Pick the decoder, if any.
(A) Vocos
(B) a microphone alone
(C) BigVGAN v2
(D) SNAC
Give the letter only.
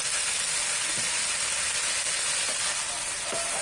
B